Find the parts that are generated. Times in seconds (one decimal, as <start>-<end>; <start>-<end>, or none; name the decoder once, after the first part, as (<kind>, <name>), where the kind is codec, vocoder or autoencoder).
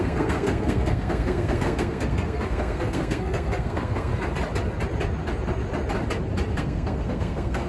0.0-4.1 (codec, SNAC); 6.5-7.7